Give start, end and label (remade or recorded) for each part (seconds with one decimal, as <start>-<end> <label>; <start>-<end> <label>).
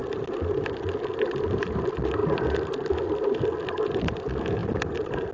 0.0-2.2 recorded; 2.2-2.7 remade; 2.7-4.6 recorded; 4.6-5.3 remade